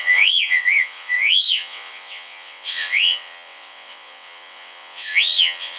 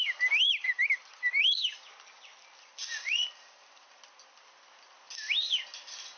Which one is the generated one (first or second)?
first